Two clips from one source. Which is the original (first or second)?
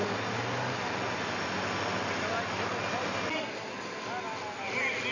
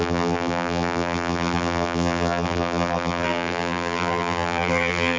first